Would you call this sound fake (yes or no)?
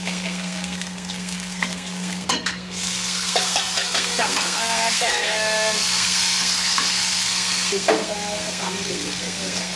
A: yes